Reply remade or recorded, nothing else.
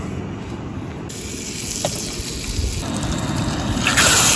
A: recorded